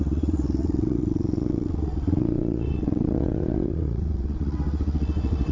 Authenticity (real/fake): fake